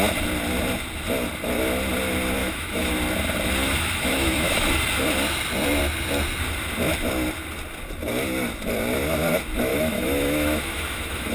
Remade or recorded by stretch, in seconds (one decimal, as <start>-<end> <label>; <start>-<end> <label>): 0.0-2.4 recorded; 2.4-2.9 remade; 2.9-3.6 recorded; 3.6-4.8 remade; 4.8-9.7 recorded; 9.7-11.3 remade